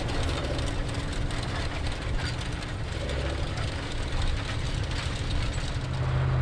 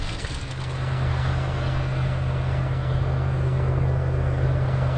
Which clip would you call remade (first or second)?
second